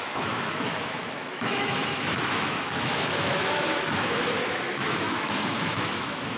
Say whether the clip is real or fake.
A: fake